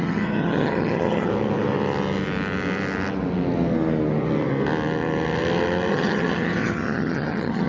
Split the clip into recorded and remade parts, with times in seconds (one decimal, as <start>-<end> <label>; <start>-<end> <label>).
0.0-1.3 remade; 1.3-5.9 recorded; 5.9-7.7 remade